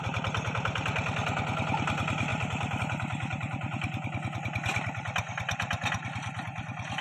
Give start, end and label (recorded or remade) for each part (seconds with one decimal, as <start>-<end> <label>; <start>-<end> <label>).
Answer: 0.0-2.3 recorded; 2.3-2.8 remade; 2.8-7.0 recorded